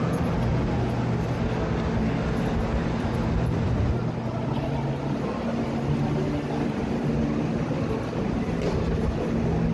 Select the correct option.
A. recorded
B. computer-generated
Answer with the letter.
A